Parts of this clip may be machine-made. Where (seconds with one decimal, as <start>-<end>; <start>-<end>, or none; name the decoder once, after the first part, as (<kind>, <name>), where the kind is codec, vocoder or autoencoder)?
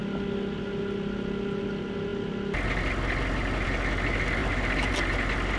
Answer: 4.4-4.9 (vocoder, BigVGAN v2)